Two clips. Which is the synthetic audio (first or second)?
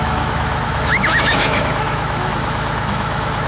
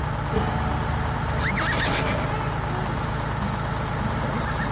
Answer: first